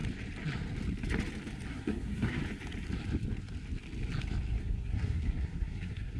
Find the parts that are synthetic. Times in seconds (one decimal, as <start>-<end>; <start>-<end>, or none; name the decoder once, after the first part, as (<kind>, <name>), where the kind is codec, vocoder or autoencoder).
1.7-2.4 (codec, SNAC); 4.6-6.2